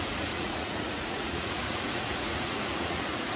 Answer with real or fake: fake